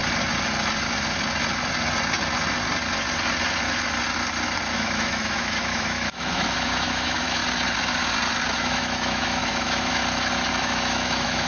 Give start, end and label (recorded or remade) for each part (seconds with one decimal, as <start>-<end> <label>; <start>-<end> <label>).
0.0-4.7 recorded; 4.7-7.4 remade; 7.4-8.6 recorded; 8.6-10.0 remade; 10.0-10.6 recorded; 10.6-11.5 remade